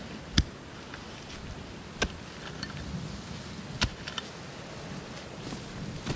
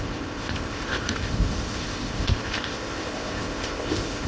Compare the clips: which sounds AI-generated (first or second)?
second